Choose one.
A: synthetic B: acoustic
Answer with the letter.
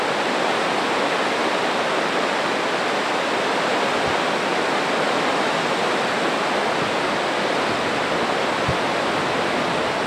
B